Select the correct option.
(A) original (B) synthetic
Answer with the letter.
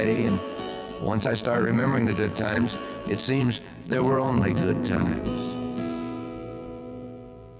B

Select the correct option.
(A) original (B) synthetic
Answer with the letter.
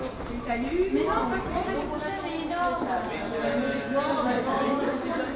A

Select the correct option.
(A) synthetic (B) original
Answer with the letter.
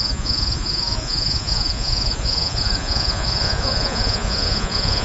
A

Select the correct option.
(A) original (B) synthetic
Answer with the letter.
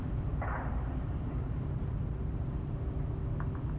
B